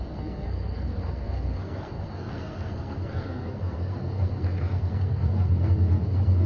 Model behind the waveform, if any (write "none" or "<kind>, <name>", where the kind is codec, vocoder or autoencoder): codec, SNAC